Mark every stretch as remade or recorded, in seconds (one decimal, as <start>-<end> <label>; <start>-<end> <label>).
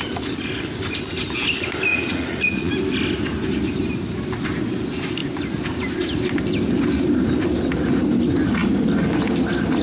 0.0-1.9 recorded; 1.9-2.7 remade; 2.7-9.8 recorded